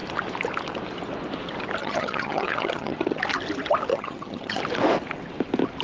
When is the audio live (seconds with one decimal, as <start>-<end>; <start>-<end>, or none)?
0.0-1.8; 3.2-3.9; 4.6-5.8